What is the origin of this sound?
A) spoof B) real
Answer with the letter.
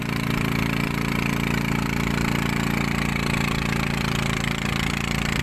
B